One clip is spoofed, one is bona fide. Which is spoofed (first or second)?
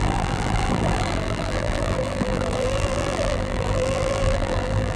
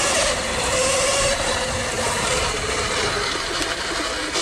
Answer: first